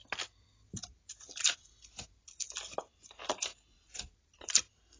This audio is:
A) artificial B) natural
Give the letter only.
B